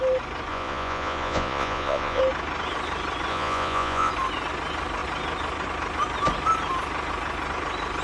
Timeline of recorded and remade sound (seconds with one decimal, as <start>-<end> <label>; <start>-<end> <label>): 0.0-0.5 recorded; 0.5-2.2 remade; 2.2-3.3 recorded; 3.3-4.1 remade; 4.1-8.0 recorded

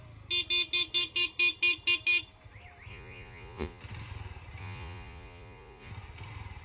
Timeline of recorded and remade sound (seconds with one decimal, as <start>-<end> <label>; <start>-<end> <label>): 0.0-2.9 recorded; 2.9-3.8 remade; 3.8-4.6 recorded; 4.6-5.9 remade; 5.9-6.6 recorded

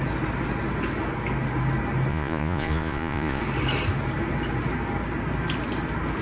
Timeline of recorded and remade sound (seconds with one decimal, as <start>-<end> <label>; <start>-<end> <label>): 0.0-2.1 recorded; 2.1-3.4 remade; 3.4-6.2 recorded

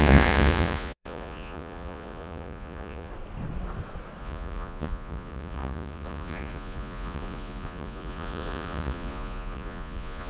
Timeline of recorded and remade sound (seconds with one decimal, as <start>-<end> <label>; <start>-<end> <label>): 0.0-3.1 remade; 3.1-4.2 recorded; 4.2-10.3 remade

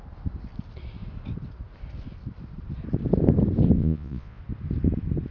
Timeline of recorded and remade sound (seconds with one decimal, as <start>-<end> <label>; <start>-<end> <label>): 0.0-3.8 recorded; 3.8-4.4 remade; 4.4-5.3 recorded

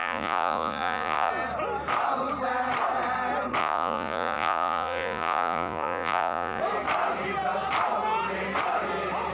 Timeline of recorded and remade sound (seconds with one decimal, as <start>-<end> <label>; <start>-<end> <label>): 0.0-1.3 remade; 1.3-3.6 recorded; 3.6-6.6 remade; 6.6-9.3 recorded

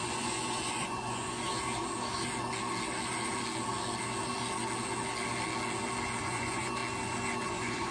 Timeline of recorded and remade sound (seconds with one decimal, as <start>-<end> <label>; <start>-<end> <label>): 0.0-1.5 remade; 1.5-6.2 recorded; 6.2-6.8 remade; 6.8-7.4 recorded; 7.4-7.9 remade

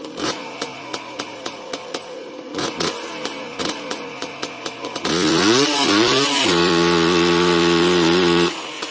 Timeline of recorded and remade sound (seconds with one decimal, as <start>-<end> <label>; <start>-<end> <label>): 0.0-8.9 remade